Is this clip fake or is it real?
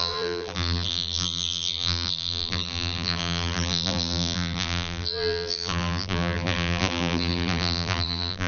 fake